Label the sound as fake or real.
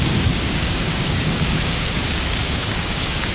fake